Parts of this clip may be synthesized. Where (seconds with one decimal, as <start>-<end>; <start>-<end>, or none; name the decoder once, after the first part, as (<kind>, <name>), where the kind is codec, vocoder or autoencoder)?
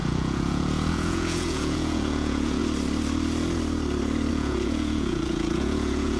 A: 0.0-2.6 (vocoder, Vocos); 4.3-6.2